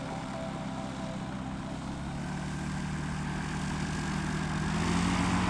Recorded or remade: recorded